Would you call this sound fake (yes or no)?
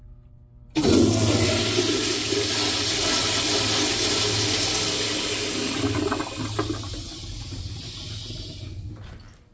no